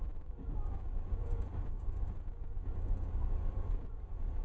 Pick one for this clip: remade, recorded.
remade